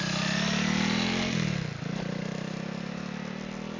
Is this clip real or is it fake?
real